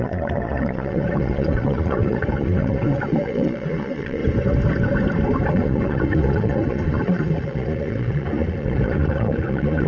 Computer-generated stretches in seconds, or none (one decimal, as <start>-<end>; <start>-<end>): 0.0-4.2; 5.5-9.9